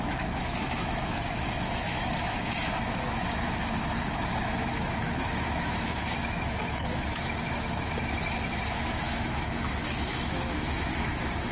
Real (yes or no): no